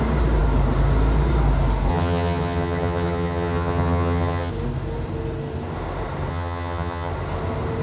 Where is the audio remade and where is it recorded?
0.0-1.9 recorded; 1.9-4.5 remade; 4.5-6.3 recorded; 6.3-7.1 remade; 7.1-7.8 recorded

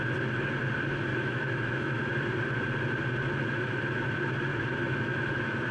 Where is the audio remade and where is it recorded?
0.0-1.1 recorded; 1.1-2.0 remade; 2.0-4.5 recorded; 4.5-5.7 remade

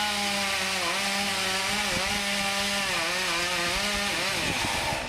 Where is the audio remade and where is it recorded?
0.0-5.1 recorded